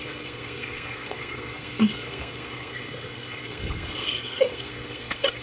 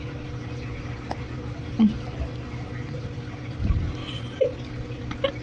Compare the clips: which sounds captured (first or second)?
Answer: second